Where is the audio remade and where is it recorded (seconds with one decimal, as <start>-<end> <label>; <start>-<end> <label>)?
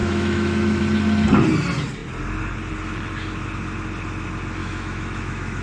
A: 0.0-0.8 remade; 0.8-4.6 recorded; 4.6-5.6 remade